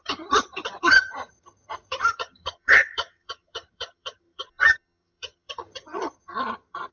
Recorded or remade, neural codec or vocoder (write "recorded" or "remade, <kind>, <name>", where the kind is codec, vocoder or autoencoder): remade, vocoder, HiFi-GAN